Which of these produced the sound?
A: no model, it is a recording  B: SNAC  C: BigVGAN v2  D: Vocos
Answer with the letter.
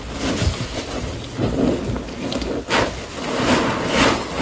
A